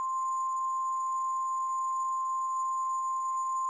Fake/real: fake